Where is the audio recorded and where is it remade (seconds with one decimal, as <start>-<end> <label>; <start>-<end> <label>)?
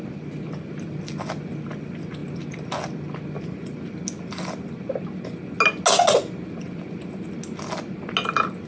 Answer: 0.0-8.7 recorded